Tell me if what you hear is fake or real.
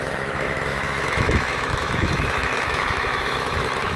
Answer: fake